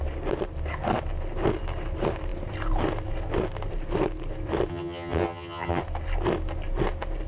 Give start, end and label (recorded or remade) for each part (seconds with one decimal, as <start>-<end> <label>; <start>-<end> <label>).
0.0-4.7 recorded; 4.7-5.8 remade; 5.8-7.3 recorded